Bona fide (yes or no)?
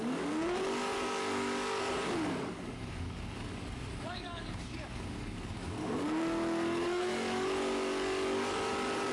no